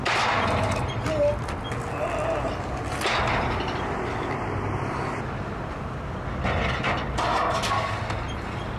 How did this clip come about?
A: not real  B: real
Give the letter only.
B